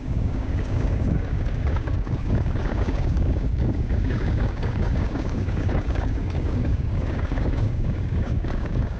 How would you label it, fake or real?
fake